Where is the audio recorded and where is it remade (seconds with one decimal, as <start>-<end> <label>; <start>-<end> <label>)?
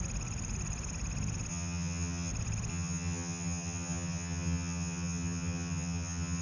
0.0-1.5 recorded; 1.5-2.3 remade; 2.3-2.7 recorded; 2.7-6.4 remade